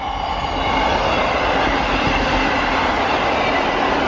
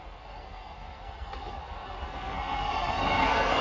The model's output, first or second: second